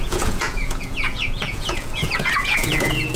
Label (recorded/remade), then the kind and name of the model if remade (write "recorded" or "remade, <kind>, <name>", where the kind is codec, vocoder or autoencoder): remade, vocoder, Vocos